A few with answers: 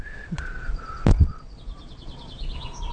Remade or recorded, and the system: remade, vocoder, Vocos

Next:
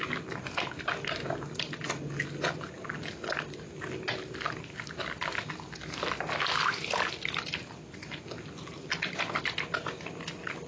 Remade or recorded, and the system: recorded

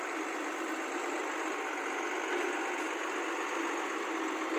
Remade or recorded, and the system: recorded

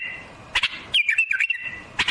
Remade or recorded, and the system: recorded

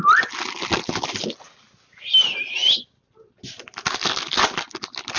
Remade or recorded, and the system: recorded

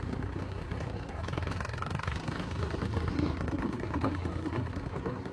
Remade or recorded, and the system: remade, codec, SNAC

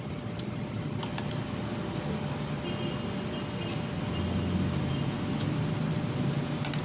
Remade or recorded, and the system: recorded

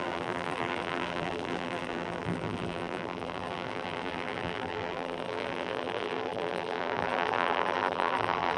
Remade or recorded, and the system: remade, vocoder, BigVGAN v2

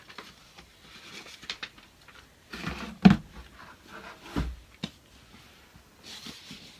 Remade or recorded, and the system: recorded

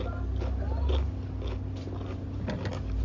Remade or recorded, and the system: recorded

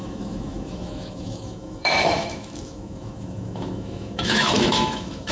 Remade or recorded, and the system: remade, autoencoder, DAC-VAE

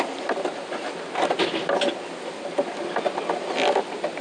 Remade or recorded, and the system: recorded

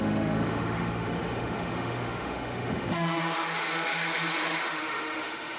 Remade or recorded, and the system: remade, autoencoder, DAC-VAE